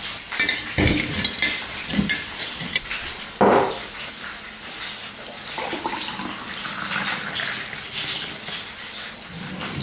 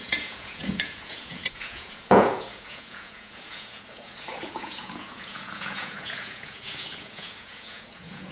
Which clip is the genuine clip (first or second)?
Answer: first